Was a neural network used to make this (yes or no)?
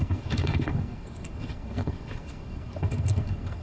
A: yes